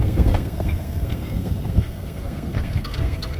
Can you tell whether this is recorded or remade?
remade